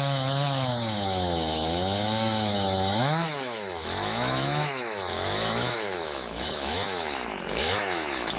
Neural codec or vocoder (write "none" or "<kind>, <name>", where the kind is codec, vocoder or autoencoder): autoencoder, DAC-VAE